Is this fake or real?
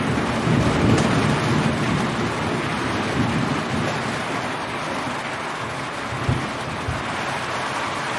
real